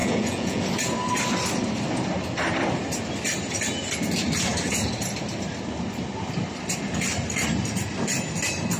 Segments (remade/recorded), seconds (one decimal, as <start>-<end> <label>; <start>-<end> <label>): 0.0-0.6 remade; 0.6-8.8 recorded